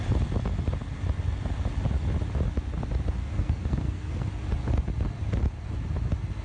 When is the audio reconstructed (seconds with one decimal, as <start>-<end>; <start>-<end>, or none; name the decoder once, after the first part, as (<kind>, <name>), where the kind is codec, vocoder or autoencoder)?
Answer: 3.2-4.3 (codec, SNAC)